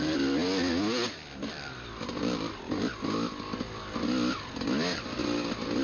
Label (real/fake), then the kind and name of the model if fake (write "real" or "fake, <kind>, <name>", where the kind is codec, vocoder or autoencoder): real